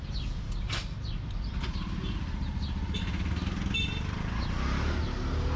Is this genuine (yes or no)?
yes